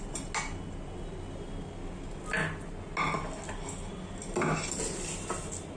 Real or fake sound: real